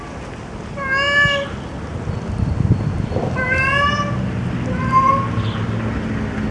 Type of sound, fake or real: real